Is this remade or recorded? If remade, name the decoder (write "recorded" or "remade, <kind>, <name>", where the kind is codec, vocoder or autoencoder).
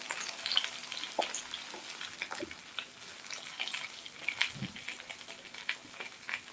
recorded